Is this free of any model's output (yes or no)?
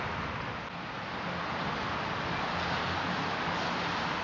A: yes